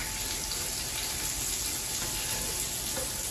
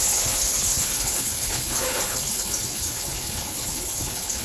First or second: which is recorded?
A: first